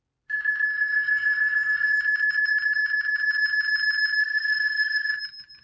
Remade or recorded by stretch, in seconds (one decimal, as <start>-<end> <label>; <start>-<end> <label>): 0.0-0.7 recorded; 0.7-1.9 remade; 1.9-4.2 recorded; 4.2-5.1 remade; 5.1-5.6 recorded